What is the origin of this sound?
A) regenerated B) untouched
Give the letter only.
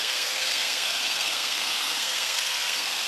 A